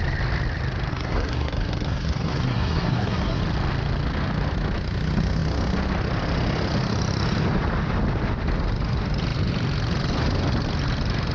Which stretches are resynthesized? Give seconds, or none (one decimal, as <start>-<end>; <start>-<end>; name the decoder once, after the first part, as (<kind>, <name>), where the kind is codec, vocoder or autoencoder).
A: 0.9-3.4 (codec, SNAC)